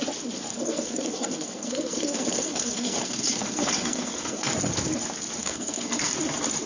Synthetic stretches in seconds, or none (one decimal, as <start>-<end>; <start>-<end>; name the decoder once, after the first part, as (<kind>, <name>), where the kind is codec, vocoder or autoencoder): 0.5-4.5 (codec, SNAC); 5.4-6.1